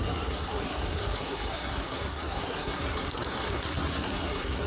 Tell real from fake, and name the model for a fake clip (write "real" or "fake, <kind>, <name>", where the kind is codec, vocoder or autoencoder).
fake, codec, SNAC